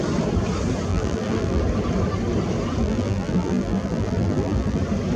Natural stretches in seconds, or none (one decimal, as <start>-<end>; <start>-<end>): 0.0-0.9; 1.6-2.8; 4.8-5.2